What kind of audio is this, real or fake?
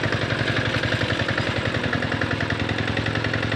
real